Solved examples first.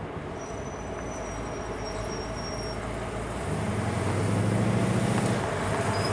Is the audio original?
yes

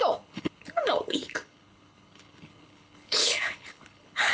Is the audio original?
no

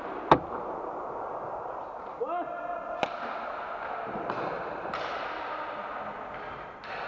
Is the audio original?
yes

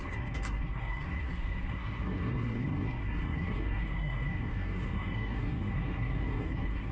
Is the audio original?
no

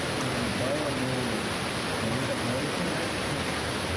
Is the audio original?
yes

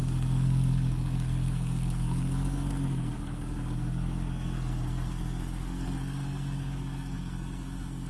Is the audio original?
no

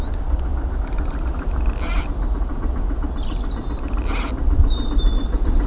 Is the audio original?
yes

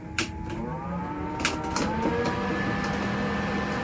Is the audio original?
yes